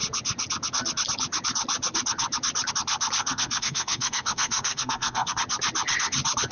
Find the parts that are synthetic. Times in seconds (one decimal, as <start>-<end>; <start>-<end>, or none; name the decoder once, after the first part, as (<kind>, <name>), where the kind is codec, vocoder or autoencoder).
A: 3.2-5.4 (codec, SNAC)